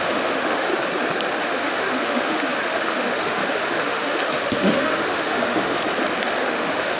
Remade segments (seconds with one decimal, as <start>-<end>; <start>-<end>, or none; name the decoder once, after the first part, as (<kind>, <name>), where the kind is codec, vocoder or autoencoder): 0.0-0.7 (autoencoder, DAC-VAE); 1.4-5.8; 6.4-7.0